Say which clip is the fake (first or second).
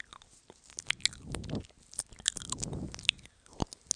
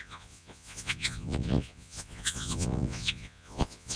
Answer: second